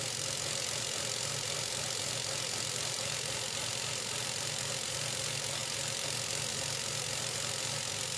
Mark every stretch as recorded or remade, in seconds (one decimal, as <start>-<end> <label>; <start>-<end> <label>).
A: 0.0-8.2 recorded